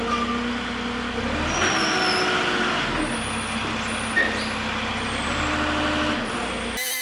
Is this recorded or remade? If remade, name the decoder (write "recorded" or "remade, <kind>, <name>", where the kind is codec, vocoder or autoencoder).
recorded